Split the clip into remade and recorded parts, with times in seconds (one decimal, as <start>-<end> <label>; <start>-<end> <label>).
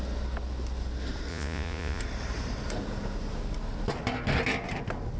0.0-1.3 recorded; 1.3-2.0 remade; 2.0-5.2 recorded